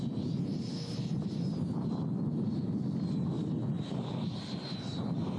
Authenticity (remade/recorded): recorded